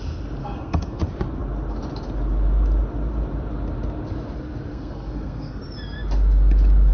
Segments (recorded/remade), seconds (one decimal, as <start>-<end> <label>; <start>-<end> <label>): 0.0-0.4 recorded; 0.4-1.0 remade; 1.0-4.7 recorded; 4.7-5.6 remade; 5.6-6.9 recorded